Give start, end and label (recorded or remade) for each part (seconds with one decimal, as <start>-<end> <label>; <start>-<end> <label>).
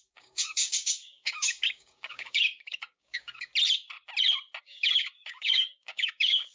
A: 0.0-3.5 remade; 3.5-4.6 recorded; 4.6-6.5 remade